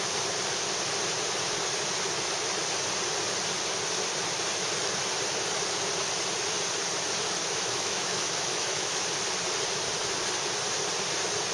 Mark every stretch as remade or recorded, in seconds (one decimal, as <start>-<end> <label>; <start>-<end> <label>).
0.0-7.4 recorded; 7.4-9.0 remade; 9.0-11.5 recorded